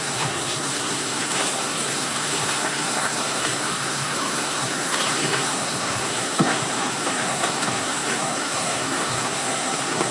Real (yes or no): no